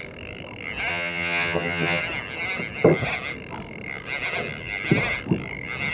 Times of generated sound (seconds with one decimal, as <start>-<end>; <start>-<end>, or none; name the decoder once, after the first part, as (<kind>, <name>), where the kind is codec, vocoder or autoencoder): 0.9-2.0 (vocoder, HiFi-GAN)